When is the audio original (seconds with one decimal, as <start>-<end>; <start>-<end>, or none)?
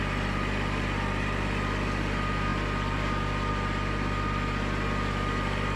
0.0-5.8